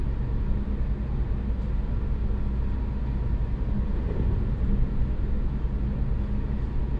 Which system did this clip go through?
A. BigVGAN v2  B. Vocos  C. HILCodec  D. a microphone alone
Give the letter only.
D